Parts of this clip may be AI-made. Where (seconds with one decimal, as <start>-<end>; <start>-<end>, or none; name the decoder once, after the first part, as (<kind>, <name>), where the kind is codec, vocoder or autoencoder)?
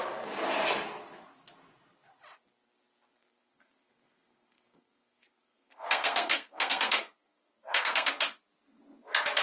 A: 3.2-8.1 (codec, SNAC)